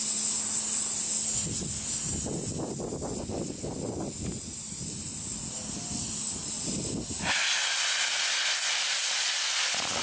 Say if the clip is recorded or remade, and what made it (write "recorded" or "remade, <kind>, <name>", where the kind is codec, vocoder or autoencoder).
recorded